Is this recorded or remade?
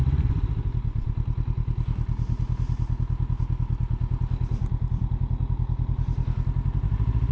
recorded